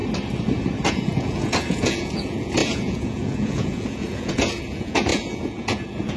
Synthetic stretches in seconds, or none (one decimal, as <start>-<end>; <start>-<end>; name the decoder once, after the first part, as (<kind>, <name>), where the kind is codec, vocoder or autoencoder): 0.9-6.2 (vocoder, Vocos)